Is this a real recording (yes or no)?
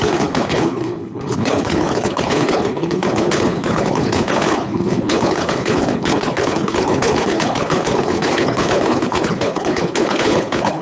no